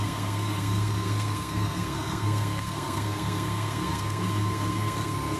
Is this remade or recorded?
remade